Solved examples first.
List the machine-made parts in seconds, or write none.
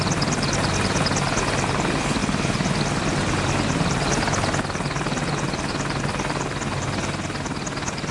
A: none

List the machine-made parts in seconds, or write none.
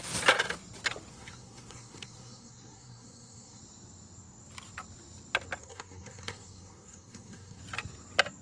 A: 1.1-3.6 (codec, SNAC); 5.6-7.6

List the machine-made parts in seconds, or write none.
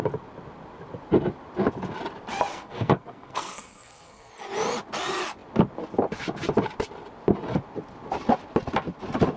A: 2.5-4.3 (codec, SNAC)